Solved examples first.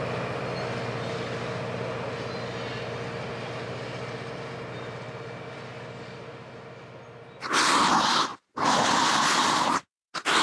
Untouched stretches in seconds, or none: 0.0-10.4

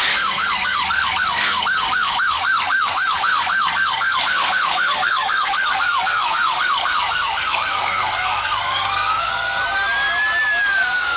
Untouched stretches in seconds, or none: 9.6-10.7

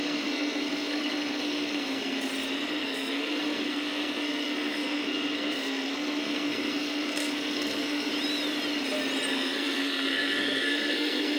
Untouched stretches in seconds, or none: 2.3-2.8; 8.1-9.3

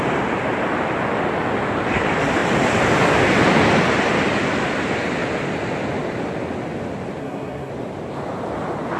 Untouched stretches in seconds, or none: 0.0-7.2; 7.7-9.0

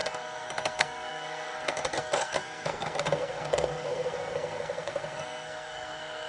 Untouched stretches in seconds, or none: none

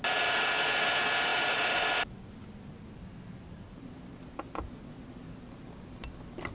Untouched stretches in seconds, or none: 0.0-6.5

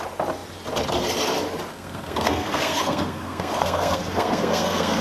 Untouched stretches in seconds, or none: 0.0-1.7

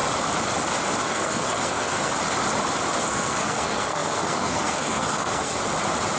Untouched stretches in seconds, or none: 0.0-1.0; 2.1-3.0; 5.6-6.2